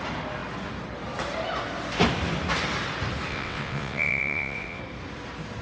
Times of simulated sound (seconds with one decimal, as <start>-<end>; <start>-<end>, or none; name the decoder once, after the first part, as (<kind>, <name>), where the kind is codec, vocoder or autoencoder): 3.3-4.8 (vocoder, WaveNeXt)